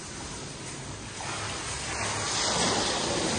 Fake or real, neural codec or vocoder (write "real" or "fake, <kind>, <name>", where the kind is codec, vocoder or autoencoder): real